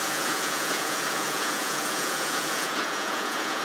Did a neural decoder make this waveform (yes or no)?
yes